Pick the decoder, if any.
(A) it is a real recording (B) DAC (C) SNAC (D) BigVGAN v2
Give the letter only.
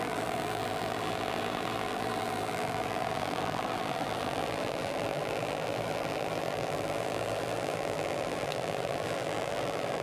D